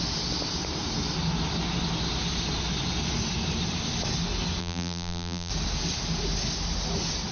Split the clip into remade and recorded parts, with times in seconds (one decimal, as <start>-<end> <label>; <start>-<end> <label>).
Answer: 0.0-4.6 recorded; 4.6-5.5 remade; 5.5-7.3 recorded